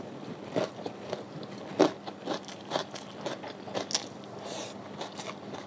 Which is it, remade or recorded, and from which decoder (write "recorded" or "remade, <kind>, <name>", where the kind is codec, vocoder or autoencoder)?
recorded